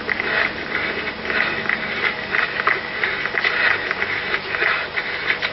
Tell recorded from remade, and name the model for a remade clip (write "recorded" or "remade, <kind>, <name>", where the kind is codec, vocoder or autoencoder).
recorded